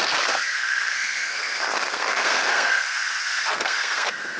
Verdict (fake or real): fake